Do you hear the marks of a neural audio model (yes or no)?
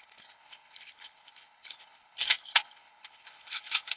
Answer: yes